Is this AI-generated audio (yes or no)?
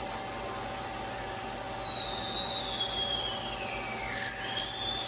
no